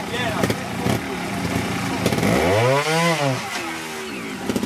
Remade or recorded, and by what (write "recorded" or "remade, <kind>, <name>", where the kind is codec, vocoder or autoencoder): recorded